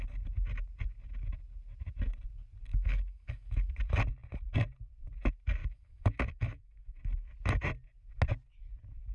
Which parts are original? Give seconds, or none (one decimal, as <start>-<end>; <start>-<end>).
0.0-2.7; 3.7-5.6; 7.0-9.1